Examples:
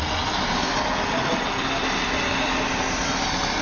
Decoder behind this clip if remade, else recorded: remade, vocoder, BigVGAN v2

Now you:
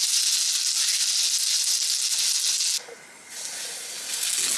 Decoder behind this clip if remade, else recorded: recorded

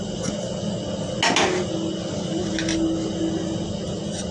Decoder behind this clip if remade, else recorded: recorded